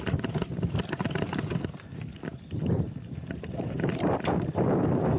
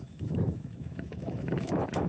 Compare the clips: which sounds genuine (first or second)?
first